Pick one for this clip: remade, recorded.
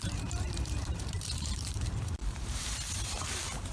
remade